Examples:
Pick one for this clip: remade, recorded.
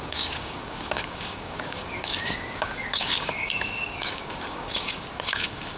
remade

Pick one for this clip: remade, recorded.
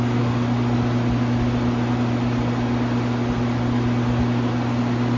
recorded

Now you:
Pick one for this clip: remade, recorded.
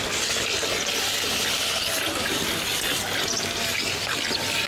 recorded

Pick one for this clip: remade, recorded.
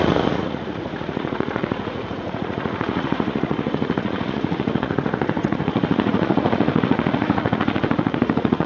remade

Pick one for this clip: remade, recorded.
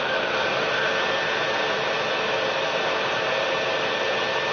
recorded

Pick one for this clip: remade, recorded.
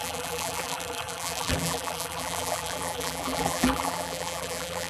remade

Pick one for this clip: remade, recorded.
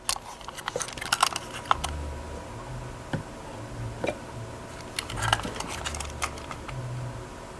recorded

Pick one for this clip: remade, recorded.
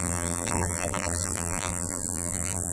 remade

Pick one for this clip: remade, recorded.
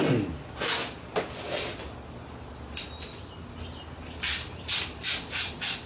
recorded